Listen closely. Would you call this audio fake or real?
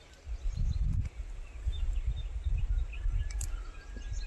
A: real